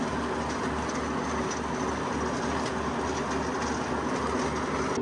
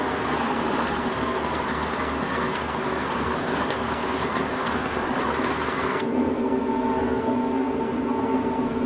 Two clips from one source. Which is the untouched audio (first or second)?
first